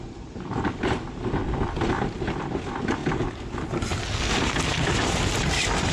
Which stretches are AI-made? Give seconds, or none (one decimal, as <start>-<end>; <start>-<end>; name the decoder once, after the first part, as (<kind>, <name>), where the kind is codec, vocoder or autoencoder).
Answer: 0.0-1.4 (vocoder, BigVGAN v2); 1.9-3.0; 4.2-5.9